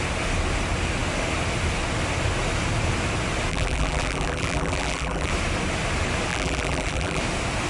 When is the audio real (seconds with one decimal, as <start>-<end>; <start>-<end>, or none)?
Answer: 0.0-3.5; 5.3-6.3; 7.2-7.7